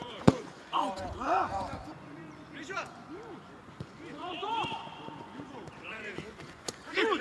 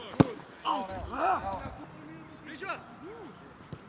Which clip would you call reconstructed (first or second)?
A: first